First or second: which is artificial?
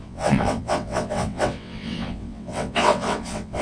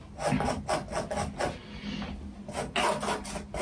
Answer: first